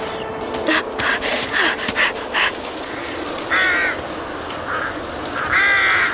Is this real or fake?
real